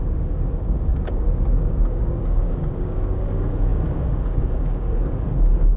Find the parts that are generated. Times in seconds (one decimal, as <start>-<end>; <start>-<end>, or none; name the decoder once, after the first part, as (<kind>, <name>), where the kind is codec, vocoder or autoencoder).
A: 0.0-5.8 (codec, DAC)